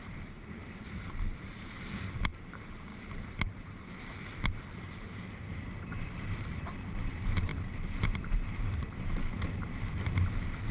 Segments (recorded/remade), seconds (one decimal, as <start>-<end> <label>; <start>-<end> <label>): 0.0-10.7 remade